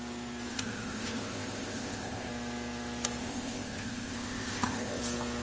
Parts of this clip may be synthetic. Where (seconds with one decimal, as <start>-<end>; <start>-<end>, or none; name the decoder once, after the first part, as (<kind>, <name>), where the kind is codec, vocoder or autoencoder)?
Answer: 0.5-2.3 (codec, ZipCodec); 3.2-5.0